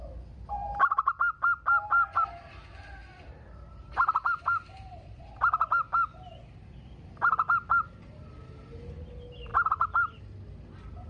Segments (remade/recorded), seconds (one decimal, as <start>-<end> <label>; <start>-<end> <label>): 0.0-3.0 recorded; 3.0-7.3 remade; 7.3-9.5 recorded; 9.5-10.2 remade; 10.2-11.1 recorded